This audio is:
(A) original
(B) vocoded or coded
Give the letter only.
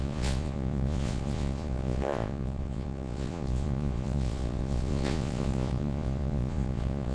B